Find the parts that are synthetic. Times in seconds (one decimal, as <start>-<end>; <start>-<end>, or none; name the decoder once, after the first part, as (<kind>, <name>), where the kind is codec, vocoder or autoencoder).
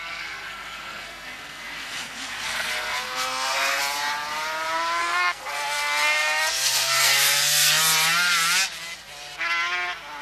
0.0-3.8 (codec, SNAC); 5.0-7.8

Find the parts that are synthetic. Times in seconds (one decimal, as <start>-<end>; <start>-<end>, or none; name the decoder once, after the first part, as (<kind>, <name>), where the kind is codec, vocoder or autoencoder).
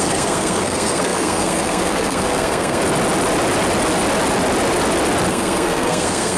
0.0-2.8 (codec, SNAC); 5.3-6.4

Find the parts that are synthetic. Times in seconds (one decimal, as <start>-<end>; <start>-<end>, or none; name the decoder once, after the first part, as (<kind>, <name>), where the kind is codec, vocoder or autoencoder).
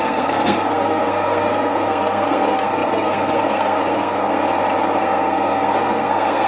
0.0-4.4 (codec, SNAC); 5.0-6.5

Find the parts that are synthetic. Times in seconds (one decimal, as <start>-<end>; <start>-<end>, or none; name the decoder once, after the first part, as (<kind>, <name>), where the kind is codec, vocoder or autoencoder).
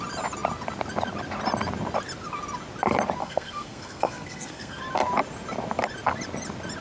3.2-4.8 (codec, SNAC)